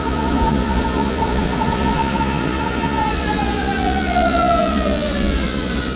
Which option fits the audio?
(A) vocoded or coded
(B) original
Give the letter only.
A